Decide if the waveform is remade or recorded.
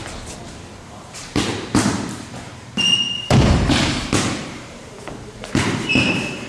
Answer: remade